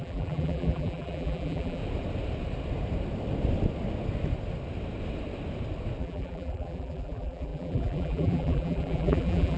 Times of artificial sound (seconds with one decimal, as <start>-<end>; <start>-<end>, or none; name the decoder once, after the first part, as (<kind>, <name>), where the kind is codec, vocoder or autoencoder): 0.0-1.8 (vocoder, BigVGAN v2); 6.0-9.6